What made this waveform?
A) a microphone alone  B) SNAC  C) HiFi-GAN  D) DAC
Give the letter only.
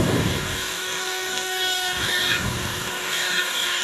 D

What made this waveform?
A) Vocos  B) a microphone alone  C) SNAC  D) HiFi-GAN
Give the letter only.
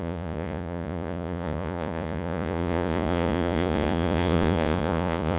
A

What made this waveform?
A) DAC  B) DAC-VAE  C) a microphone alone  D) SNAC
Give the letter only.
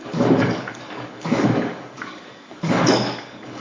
A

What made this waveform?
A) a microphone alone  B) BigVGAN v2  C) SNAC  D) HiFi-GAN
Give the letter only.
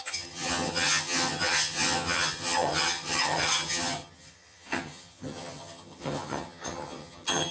D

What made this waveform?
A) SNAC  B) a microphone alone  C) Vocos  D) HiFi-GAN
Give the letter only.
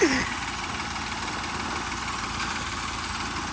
B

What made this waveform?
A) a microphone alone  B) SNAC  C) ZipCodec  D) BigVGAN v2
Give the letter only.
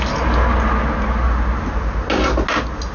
A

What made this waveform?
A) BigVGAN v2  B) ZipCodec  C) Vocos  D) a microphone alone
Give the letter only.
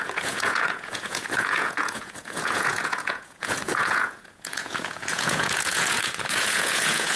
C